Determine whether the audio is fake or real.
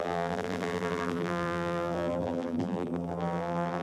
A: fake